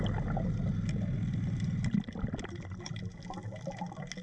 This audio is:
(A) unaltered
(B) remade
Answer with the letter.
A